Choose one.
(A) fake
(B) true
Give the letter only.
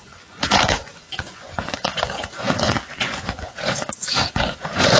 A